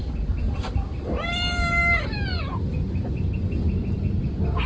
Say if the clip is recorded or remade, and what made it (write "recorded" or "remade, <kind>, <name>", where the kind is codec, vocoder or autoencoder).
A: recorded